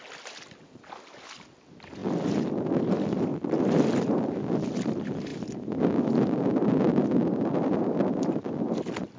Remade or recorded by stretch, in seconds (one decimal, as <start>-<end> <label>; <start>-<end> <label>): 0.0-9.2 recorded